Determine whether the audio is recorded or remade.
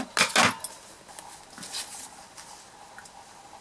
recorded